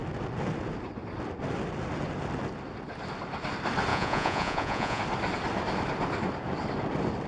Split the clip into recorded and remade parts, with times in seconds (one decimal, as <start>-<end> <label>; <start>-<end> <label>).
0.0-3.9 recorded; 3.9-5.0 remade; 5.0-7.3 recorded